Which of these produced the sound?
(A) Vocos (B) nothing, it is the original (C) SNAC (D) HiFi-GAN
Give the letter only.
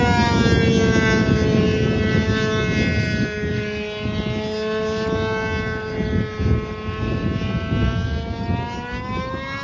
B